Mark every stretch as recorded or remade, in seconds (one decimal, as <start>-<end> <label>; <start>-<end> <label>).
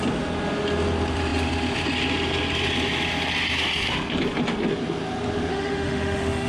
0.0-5.5 recorded; 5.5-6.5 remade